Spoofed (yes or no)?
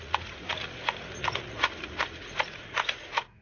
yes